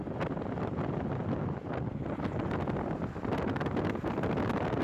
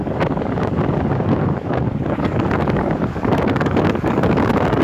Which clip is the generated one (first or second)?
second